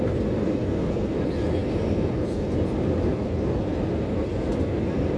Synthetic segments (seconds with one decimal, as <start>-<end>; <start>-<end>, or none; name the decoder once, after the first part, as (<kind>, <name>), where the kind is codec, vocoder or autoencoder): 0.0-5.2 (vocoder, BigVGAN v2)